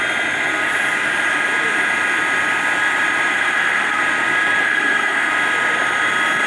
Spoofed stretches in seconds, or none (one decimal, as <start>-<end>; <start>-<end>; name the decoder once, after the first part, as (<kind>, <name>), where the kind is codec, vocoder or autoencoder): 3.3-4.0 (codec, SNAC); 4.6-5.3